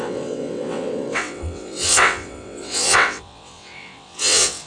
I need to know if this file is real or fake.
fake